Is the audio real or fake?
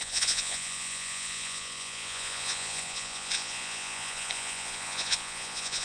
fake